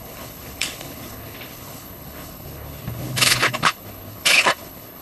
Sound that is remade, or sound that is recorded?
remade